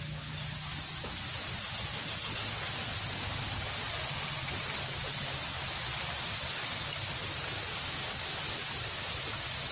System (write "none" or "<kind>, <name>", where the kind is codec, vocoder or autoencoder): none